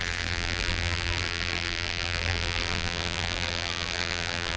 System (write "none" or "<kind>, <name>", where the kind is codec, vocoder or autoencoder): vocoder, BigVGAN v2